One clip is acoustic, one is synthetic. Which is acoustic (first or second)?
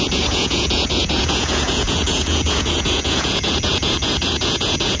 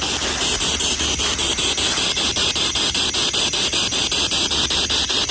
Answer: second